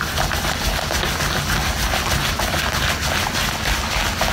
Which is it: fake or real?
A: real